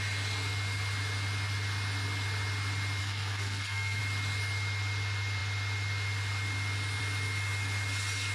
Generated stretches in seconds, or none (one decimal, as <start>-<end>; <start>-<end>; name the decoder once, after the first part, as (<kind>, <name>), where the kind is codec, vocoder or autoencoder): 3.0-4.0 (codec, SNAC)